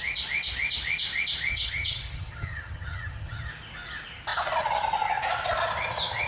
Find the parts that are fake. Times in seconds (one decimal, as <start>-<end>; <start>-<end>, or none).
1.5-3.5